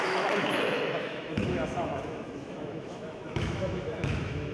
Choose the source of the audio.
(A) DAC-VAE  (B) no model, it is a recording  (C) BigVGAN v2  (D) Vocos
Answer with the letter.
A